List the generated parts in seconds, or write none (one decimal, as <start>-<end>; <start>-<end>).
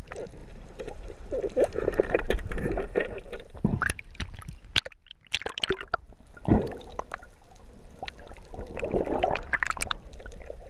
0.4-4.6